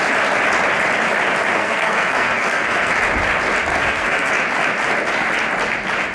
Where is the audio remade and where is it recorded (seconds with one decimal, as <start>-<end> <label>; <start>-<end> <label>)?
0.0-1.5 recorded; 1.5-2.9 remade; 2.9-3.7 recorded; 3.7-4.3 remade; 4.3-6.1 recorded